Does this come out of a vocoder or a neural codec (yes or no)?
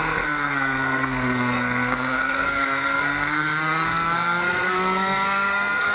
yes